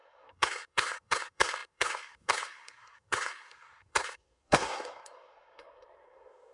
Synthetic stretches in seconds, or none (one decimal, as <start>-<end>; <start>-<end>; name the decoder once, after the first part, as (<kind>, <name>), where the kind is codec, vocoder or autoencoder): 0.0-6.5 (codec, SNAC)